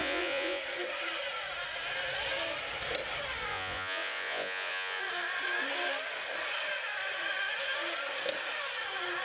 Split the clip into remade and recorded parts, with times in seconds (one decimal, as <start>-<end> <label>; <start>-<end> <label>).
0.0-0.6 remade; 0.6-3.5 recorded; 3.5-5.0 remade; 5.0-9.2 recorded